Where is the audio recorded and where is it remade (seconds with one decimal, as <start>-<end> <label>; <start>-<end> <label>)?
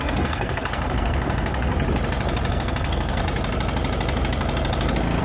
0.0-1.7 remade; 1.7-2.5 recorded; 2.5-3.2 remade; 3.2-5.2 recorded